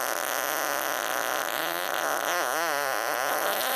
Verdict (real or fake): real